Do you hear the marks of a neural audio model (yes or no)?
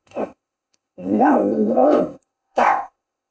yes